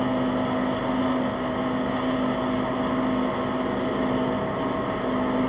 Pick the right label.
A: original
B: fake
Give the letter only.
A